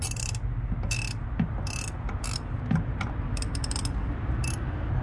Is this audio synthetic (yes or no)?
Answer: no